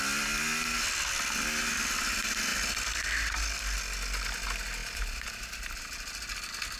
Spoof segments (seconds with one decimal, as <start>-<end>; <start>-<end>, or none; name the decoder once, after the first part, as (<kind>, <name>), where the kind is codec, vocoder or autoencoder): none

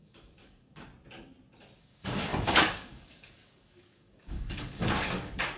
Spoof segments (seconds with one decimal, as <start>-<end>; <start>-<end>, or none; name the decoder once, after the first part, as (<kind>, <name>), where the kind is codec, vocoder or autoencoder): 0.0-0.9 (codec, DAC); 1.8-5.6